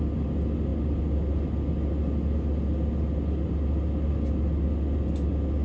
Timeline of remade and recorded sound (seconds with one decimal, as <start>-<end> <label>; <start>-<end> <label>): 0.0-5.6 recorded